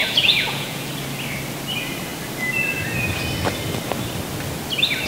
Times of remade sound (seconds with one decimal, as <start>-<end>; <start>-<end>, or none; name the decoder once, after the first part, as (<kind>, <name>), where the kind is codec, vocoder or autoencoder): 0.0-0.9 (vocoder, Vocos)